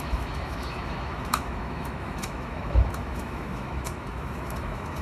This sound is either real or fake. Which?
fake